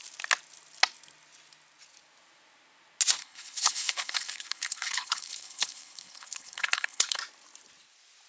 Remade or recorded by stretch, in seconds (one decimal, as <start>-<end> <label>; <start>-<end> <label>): 0.0-3.2 recorded; 3.2-7.2 remade; 7.2-8.3 recorded